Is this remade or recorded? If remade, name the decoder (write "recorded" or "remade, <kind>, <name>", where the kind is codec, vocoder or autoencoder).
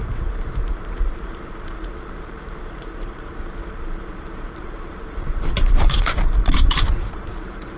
remade, vocoder, BigVGAN v2